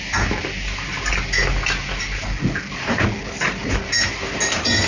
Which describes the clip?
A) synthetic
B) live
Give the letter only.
B